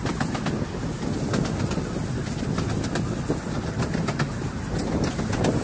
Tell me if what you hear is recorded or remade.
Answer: recorded